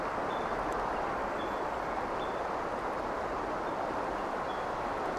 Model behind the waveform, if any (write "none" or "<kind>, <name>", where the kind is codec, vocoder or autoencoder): none